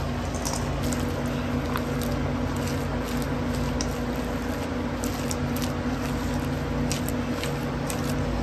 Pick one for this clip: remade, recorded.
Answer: recorded